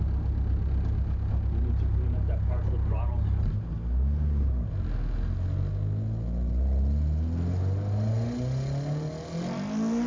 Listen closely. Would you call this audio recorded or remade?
recorded